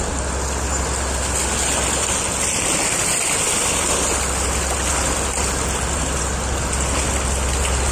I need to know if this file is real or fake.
real